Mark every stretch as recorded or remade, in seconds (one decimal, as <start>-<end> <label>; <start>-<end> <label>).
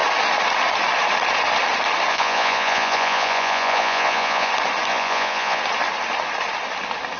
0.0-2.1 recorded; 2.1-4.5 remade; 4.5-4.9 recorded; 4.9-5.6 remade; 5.6-7.2 recorded